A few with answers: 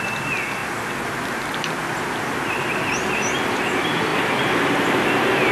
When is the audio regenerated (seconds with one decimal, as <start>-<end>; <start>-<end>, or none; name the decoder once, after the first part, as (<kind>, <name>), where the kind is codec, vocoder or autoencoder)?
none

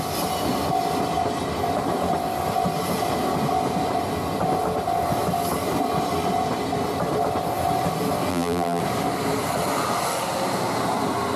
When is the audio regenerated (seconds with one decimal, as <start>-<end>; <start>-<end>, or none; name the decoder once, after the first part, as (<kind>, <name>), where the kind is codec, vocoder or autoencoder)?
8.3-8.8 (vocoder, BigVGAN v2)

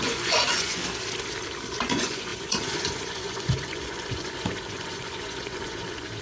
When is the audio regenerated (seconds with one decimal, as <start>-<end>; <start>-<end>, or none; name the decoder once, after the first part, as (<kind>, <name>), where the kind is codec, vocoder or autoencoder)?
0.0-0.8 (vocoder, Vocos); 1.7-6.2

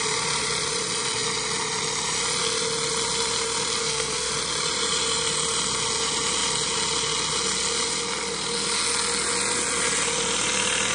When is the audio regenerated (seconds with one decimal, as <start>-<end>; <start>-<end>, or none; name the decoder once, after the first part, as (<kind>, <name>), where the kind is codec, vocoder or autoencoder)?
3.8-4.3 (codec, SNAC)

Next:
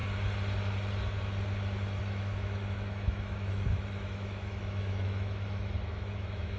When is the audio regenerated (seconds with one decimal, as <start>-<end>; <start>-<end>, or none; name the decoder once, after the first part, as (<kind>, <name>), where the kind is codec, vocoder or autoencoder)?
2.0-6.6 (autoencoder, DAC-VAE)